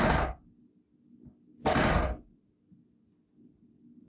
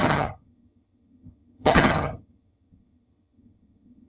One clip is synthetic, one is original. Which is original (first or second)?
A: first